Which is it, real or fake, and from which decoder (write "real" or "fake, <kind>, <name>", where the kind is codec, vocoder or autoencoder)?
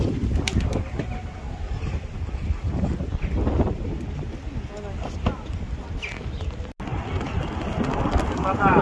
real